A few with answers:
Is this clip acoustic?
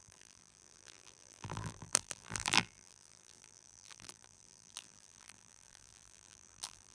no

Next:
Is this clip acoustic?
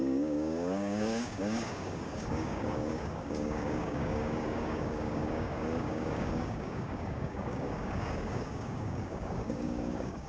no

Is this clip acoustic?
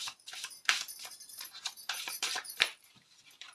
no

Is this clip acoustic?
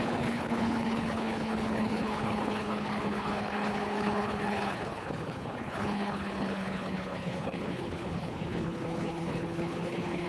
no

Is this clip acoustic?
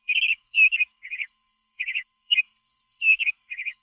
no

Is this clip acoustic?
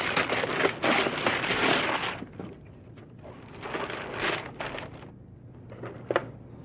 yes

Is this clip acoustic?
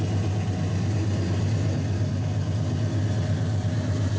yes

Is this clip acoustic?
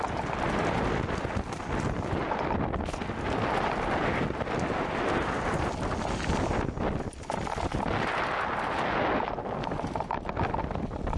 yes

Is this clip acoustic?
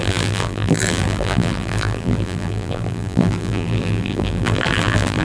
no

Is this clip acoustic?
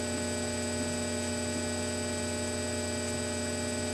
yes